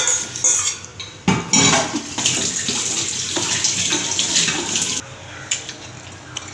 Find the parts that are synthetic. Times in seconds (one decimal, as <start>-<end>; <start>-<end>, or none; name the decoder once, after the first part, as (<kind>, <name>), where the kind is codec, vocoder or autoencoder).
none